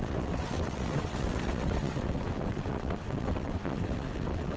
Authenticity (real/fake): fake